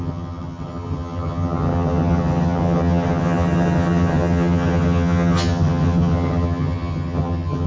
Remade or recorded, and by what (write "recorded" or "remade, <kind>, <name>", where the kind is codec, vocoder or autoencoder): remade, vocoder, HiFi-GAN